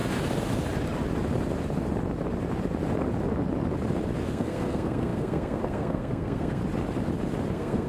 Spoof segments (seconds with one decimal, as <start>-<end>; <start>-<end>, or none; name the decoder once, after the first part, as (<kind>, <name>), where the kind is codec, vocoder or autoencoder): 4.3-6.6 (codec, SNAC); 7.5-7.9